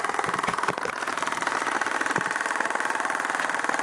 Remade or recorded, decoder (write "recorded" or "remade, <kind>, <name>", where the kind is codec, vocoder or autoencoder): recorded